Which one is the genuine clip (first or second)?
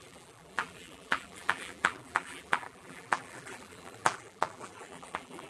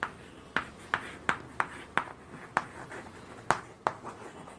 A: second